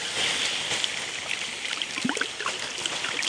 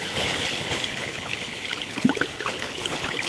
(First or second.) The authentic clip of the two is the first